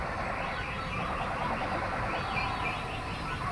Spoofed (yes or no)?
no